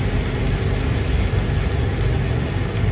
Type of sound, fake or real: real